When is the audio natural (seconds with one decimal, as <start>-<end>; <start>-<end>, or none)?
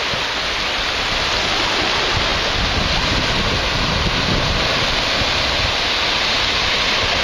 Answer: 0.0-7.2